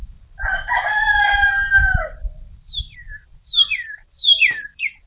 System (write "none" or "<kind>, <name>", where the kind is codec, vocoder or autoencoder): vocoder, BigVGAN v2